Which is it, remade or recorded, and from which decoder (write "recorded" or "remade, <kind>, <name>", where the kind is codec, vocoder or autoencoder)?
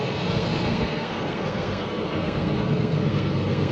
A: remade, codec, SNAC